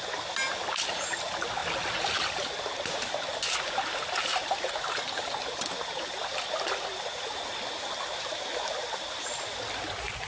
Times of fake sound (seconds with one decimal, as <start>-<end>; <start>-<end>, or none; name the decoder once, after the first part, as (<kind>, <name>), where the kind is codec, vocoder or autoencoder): 4.3-5.6 (vocoder, BigVGAN v2)